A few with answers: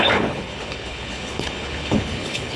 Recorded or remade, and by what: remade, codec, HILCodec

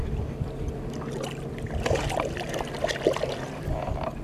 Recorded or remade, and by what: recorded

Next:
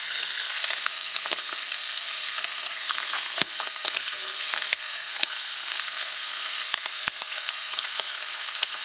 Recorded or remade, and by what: remade, codec, SNAC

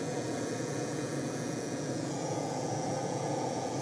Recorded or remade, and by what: remade, vocoder, Vocos